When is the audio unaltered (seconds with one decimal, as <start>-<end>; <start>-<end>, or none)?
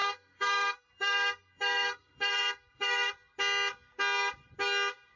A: 3.1-5.2